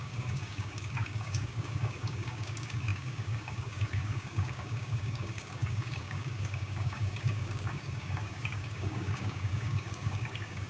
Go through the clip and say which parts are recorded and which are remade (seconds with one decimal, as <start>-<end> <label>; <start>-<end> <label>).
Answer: 0.0-10.7 remade